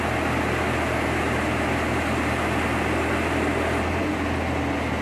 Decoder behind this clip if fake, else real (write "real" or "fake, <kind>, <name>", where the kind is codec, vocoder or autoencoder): real